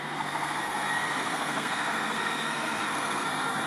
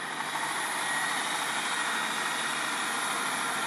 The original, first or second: second